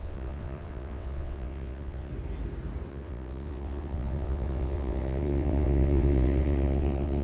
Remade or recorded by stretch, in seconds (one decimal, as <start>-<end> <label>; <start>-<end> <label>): 0.0-2.1 remade; 2.1-2.9 recorded; 2.9-7.2 remade